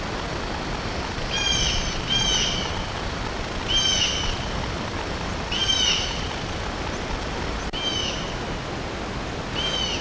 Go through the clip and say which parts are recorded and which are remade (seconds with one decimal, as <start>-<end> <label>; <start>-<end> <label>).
0.0-10.0 recorded